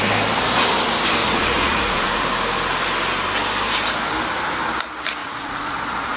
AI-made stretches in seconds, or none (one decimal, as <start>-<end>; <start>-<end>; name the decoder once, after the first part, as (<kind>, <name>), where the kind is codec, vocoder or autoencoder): 1.2-2.2 (vocoder, Vocos); 5.2-6.2